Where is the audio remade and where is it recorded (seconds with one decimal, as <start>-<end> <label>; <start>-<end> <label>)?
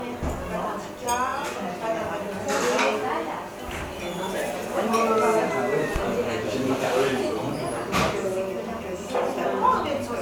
0.0-10.2 recorded